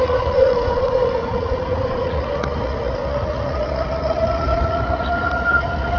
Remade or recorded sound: remade